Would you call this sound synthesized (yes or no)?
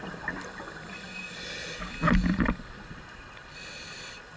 no